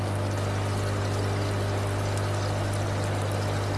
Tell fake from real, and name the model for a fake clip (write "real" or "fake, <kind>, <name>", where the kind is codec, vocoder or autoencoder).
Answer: real